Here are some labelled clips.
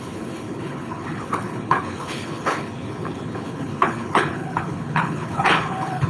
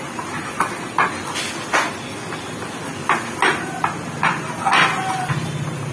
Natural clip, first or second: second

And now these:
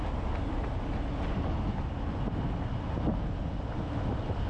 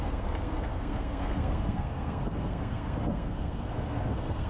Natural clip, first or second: first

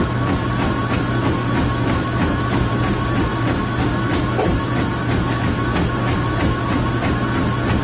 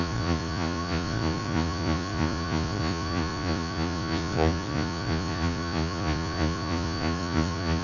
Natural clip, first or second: first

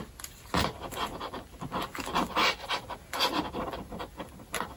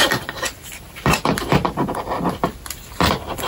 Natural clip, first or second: first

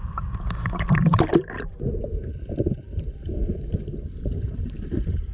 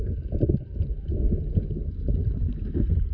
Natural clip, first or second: second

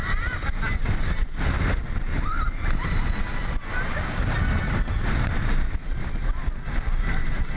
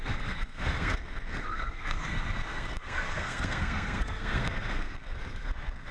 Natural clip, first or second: first